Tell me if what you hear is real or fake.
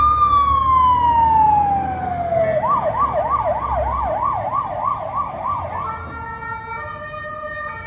real